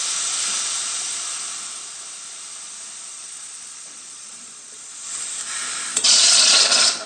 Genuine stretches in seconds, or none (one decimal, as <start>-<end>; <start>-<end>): 0.0-3.1; 4.8-5.9

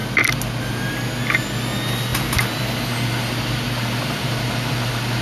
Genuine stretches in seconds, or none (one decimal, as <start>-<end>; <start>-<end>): 0.0-5.2

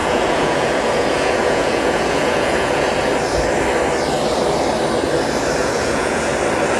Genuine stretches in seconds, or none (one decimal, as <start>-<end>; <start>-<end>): 2.9-5.6; 6.2-6.8

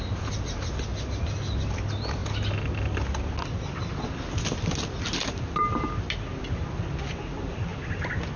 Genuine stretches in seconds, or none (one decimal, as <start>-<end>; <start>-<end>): 0.0-8.4